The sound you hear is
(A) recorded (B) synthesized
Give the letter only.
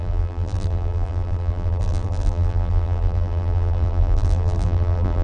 B